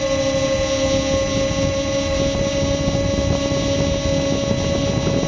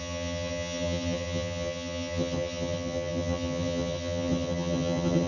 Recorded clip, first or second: first